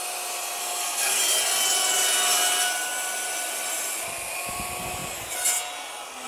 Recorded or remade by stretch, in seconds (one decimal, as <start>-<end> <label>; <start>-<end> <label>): 0.0-0.6 recorded; 0.6-1.2 remade; 1.2-6.3 recorded